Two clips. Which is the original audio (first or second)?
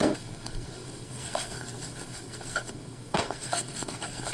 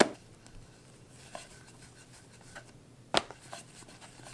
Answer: second